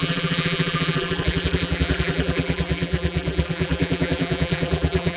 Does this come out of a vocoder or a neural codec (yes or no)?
yes